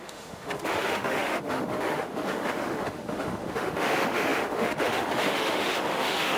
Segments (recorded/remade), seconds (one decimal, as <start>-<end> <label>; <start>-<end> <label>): 0.0-6.4 remade